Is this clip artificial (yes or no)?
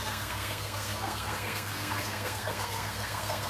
yes